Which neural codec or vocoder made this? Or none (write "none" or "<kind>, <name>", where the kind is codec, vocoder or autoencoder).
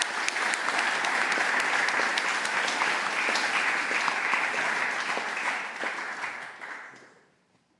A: none